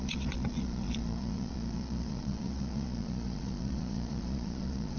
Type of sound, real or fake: fake